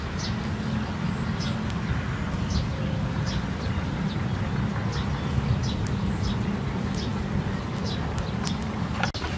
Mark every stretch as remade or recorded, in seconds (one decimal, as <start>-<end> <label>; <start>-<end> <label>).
0.0-9.4 recorded